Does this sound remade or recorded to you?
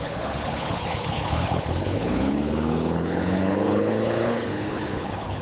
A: remade